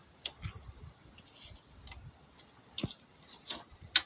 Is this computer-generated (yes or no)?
no